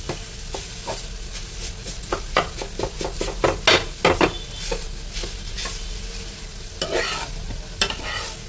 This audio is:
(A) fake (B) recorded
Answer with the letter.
B